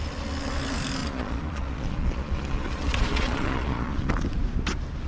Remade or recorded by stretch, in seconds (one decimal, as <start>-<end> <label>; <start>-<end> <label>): 0.0-1.0 recorded; 1.0-4.1 remade; 4.1-5.1 recorded